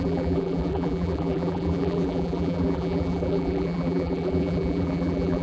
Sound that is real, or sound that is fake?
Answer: fake